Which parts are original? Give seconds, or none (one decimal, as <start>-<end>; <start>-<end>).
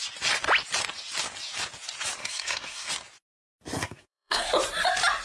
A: 0.0-2.2; 2.9-3.8; 4.5-5.2